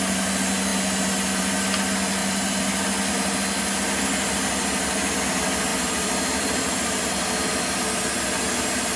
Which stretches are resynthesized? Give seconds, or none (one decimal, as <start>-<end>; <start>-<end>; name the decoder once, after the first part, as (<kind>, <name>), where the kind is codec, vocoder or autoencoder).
5.7-7.1 (vocoder, BigVGAN v2)